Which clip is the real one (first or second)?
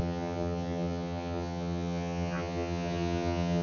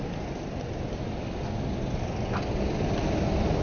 second